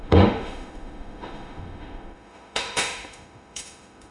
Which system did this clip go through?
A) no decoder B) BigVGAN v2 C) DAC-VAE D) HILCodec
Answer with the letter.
C